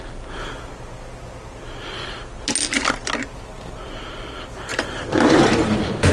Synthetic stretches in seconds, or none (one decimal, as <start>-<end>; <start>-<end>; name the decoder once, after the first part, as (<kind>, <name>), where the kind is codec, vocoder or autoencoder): 4.7-6.1 (vocoder, BigVGAN v2)